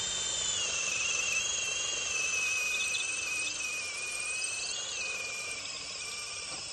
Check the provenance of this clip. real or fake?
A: real